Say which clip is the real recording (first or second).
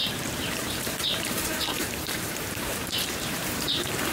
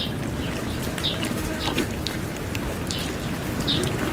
second